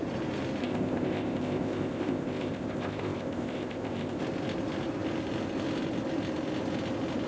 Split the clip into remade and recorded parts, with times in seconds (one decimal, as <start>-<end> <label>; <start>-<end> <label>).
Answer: 0.0-0.6 recorded; 0.6-4.2 remade; 4.2-7.3 recorded